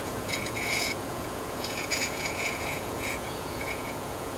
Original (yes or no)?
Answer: no